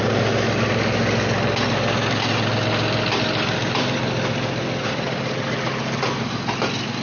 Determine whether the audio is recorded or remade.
recorded